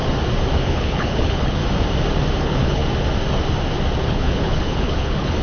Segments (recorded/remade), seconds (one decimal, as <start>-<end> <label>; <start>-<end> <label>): 0.0-0.6 recorded; 0.6-1.6 remade; 1.6-2.4 recorded; 2.4-2.8 remade; 2.8-4.0 recorded; 4.0-5.4 remade